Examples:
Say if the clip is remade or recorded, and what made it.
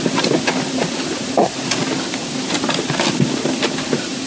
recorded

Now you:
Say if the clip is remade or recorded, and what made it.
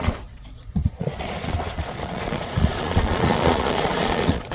remade, vocoder, Vocos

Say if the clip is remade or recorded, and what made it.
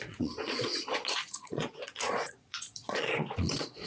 remade, vocoder, Vocos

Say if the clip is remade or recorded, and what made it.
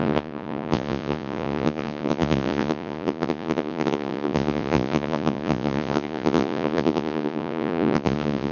remade, vocoder, Vocos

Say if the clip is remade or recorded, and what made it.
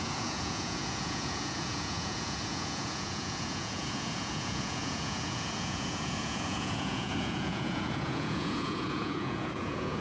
remade, vocoder, Vocos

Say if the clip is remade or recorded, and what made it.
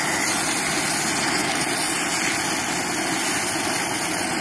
recorded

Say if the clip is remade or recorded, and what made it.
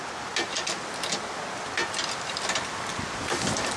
recorded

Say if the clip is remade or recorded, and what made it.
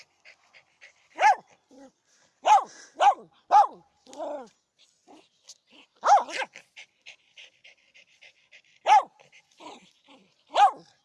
recorded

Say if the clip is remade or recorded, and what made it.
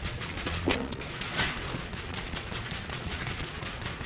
remade, vocoder, Vocos